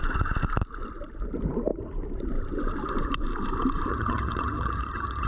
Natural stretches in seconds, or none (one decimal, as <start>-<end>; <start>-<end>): 0.0-3.9